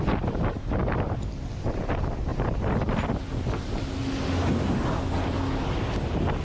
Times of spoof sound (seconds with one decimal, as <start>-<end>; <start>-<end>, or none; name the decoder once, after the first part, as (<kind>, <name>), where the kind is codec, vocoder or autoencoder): none